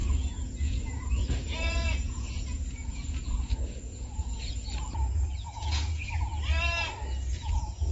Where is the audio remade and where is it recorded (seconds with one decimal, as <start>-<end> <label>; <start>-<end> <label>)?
0.0-6.3 remade; 6.3-7.3 recorded; 7.3-7.9 remade